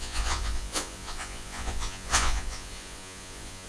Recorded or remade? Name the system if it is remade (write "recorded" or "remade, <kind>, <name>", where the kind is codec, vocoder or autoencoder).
remade, vocoder, Vocos